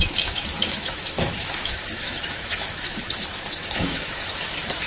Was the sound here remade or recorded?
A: remade